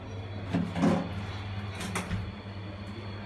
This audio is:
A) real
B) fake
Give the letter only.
A